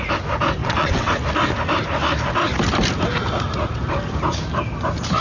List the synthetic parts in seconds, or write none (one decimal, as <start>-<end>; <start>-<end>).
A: 0.6-1.1